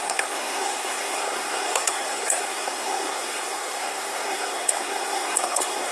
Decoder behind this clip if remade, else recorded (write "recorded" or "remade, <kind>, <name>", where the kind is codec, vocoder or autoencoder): remade, codec, SNAC